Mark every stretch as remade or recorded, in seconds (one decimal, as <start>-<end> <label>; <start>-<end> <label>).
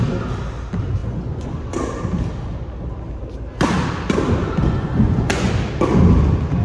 0.0-1.0 recorded; 1.0-1.6 remade; 1.6-4.4 recorded; 4.4-5.5 remade; 5.5-6.6 recorded